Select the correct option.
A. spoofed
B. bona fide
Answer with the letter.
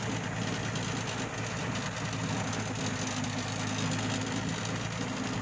B